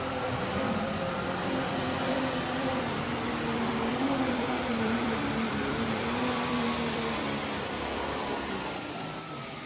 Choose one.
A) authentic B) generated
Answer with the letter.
B